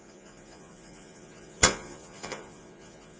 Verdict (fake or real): fake